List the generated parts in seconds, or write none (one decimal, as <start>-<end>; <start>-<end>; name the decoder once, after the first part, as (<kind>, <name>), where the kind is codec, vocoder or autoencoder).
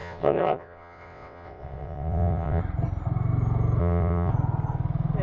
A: 0.0-2.6 (vocoder, WaveNeXt); 3.8-4.3